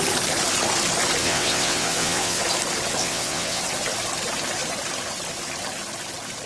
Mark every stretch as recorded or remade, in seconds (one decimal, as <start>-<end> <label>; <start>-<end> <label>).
0.0-1.2 recorded; 1.2-2.4 remade; 2.4-3.0 recorded; 3.0-3.6 remade; 3.6-6.5 recorded